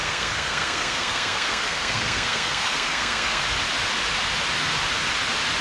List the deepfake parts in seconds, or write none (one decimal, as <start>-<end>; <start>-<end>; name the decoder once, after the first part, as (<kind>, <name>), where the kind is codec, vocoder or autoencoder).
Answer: 0.0-3.4 (codec, SNAC)